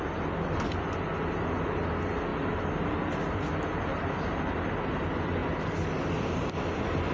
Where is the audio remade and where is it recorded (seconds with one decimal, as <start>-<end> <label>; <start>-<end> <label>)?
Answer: 0.0-2.3 recorded; 2.3-3.2 remade; 3.2-3.9 recorded; 3.9-4.7 remade; 4.7-7.1 recorded